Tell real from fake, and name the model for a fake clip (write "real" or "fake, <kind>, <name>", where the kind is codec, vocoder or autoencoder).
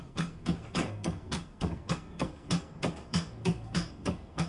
fake, codec, SNAC